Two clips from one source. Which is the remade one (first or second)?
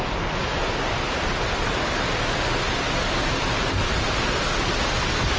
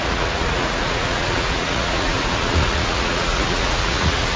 second